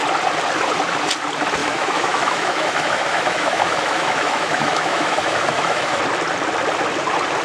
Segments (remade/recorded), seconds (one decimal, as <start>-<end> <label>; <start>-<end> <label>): 0.0-1.6 recorded; 1.6-6.0 remade; 6.0-7.4 recorded